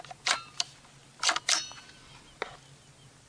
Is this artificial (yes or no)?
no